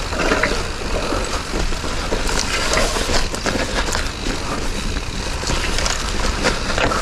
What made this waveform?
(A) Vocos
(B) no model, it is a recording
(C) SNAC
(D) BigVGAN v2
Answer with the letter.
B